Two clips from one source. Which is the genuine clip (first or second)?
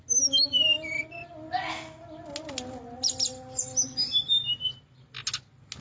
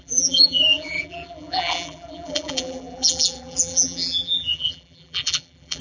first